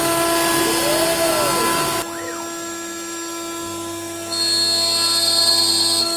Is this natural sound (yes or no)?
yes